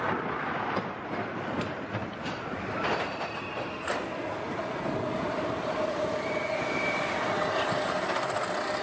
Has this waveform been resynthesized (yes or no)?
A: no